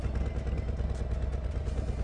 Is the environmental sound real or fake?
real